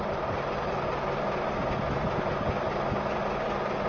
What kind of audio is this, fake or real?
real